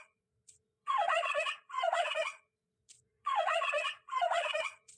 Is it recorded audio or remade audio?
remade